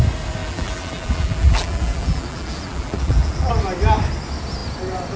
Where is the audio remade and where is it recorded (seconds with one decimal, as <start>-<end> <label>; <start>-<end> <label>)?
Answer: 0.0-0.4 recorded; 0.4-3.5 remade; 3.5-5.2 recorded